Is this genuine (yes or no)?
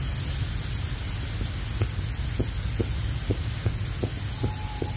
yes